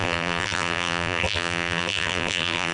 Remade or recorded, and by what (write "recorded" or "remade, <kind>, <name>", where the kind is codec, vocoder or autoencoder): remade, vocoder, BigVGAN v2